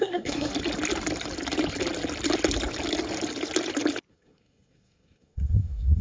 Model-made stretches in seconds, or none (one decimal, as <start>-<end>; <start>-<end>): 0.0-0.5; 4.1-6.0